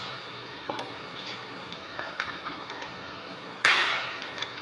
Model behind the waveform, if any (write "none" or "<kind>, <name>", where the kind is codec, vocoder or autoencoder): codec, SNAC